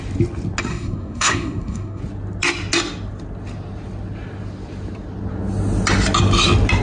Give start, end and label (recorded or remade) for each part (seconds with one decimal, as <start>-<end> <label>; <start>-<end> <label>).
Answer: 0.0-0.7 recorded; 0.7-2.0 remade; 2.0-6.8 recorded